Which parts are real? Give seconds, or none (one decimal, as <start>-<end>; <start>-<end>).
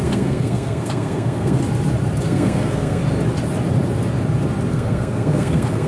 1.6-2.2; 3.0-4.7